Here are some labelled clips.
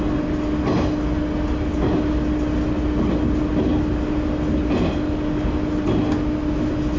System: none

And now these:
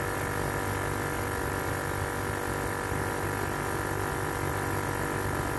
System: none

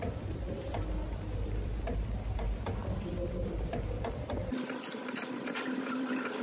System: vocoder, BigVGAN v2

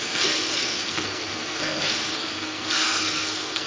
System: codec, SNAC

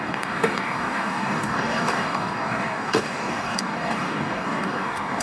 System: codec, DAC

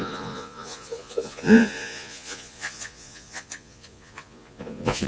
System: vocoder, Vocos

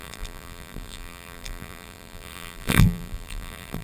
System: vocoder, BigVGAN v2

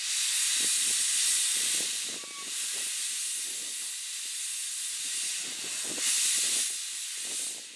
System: none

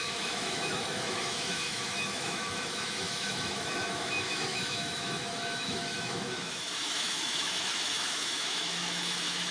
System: autoencoder, DAC-VAE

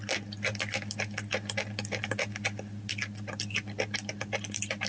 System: none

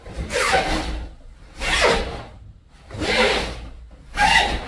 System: none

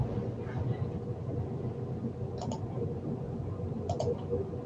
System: none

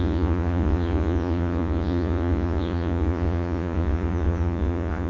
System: vocoder, Vocos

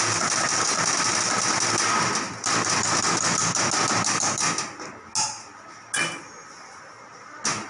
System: none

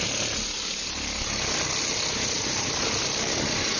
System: none